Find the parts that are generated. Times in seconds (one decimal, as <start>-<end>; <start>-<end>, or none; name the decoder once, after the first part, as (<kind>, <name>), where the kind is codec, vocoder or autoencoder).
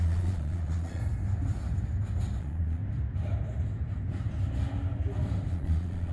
0.0-1.0 (vocoder, Vocos); 2.4-2.8; 5.5-6.1